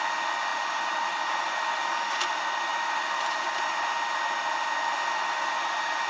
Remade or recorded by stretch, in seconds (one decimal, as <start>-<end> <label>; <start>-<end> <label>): 0.0-6.1 recorded